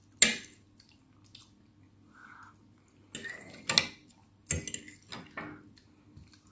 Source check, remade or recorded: recorded